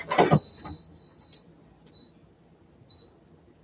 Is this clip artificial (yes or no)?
no